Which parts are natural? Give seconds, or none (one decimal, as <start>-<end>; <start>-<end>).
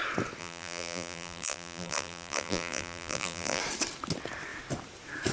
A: 0.0-0.4; 3.6-5.3